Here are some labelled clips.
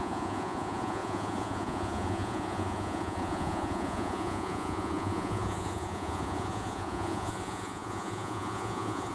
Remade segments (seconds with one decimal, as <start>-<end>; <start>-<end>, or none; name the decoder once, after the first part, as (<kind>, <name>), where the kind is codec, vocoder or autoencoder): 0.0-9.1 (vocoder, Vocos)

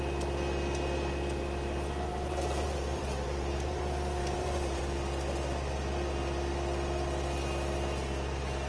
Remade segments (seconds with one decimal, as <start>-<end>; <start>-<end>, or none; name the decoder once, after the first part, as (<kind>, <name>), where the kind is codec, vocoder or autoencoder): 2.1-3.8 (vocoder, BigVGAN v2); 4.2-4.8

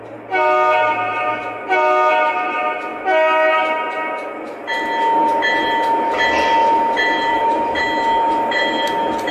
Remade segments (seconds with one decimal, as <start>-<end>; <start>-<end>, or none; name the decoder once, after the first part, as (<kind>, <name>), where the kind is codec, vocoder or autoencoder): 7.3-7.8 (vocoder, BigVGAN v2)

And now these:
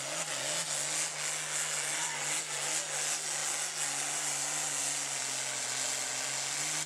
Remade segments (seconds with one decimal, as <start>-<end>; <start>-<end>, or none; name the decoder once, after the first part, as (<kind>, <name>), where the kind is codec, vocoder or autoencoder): none